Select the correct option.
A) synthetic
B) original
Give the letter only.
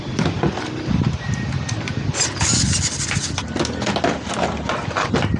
B